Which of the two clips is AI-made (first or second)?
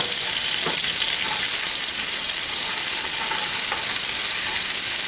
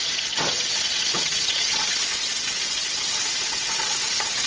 second